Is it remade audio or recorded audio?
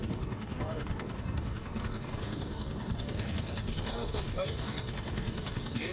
remade